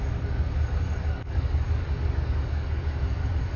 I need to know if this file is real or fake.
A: fake